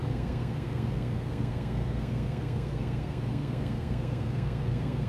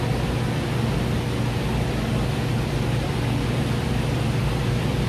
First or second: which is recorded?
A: second